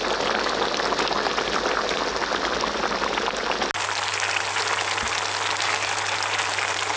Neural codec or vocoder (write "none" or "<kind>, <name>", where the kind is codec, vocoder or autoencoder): none